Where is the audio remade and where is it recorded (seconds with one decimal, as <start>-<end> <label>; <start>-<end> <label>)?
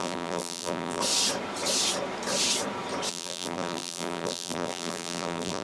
0.0-1.0 remade; 1.0-3.1 recorded; 3.1-5.6 remade